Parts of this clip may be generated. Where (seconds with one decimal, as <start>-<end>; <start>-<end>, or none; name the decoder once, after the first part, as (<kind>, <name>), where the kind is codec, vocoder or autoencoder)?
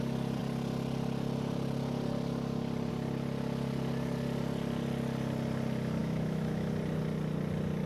6.0-6.7 (autoencoder, DAC-VAE)